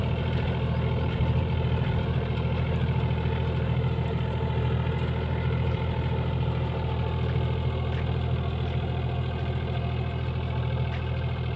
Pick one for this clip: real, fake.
real